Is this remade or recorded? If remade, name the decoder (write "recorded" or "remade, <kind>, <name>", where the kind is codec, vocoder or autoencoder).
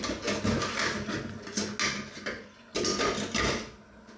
recorded